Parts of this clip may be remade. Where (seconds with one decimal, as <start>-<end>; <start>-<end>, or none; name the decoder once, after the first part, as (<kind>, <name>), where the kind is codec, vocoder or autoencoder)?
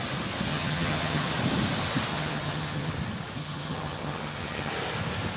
0.5-1.3 (vocoder, HiFi-GAN); 2.1-2.9; 3.4-4.7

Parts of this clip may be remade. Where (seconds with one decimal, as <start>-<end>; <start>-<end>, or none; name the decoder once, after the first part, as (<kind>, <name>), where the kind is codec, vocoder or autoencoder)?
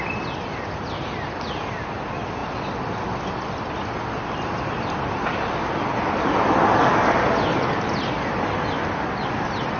none